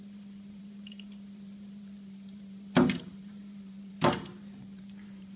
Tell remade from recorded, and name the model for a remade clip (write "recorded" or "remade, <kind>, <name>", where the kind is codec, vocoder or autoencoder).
remade, vocoder, BigVGAN v2